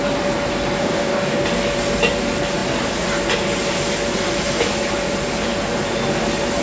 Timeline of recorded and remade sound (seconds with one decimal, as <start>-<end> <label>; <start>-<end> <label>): 0.0-0.8 recorded; 0.8-1.4 remade; 1.4-6.6 recorded